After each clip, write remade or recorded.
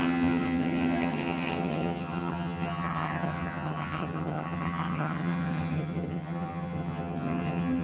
remade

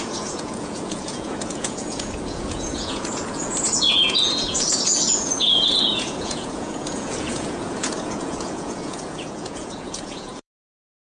remade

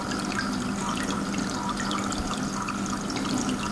recorded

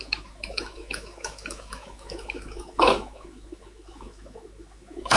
remade